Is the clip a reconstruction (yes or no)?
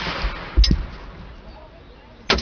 no